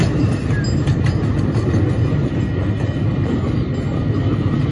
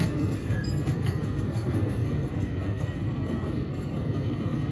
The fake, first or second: second